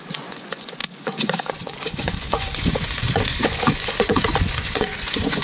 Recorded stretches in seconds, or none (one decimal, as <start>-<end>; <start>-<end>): none